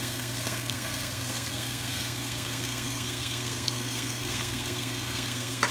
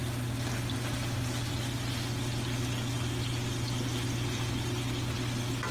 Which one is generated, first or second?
first